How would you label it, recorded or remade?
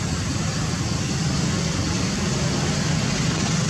recorded